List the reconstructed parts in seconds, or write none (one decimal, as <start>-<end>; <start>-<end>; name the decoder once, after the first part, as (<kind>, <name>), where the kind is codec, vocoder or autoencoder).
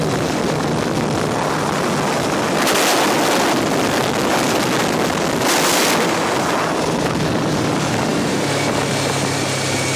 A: none